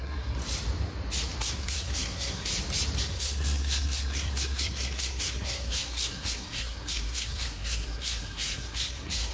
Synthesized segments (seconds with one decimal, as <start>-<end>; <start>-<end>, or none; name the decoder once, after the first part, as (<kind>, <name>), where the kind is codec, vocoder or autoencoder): 0.0-0.4 (codec, SNAC); 1.4-2.5; 3.0-9.3